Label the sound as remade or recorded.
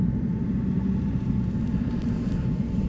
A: remade